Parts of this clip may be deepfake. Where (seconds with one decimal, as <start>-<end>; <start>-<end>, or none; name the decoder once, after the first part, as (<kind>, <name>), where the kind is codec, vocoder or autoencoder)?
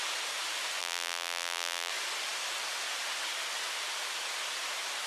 0.8-1.9 (vocoder, BigVGAN v2)